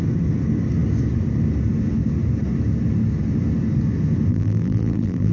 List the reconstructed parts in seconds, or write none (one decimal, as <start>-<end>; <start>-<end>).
4.3-5.3